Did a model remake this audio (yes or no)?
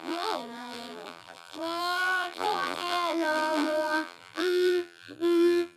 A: yes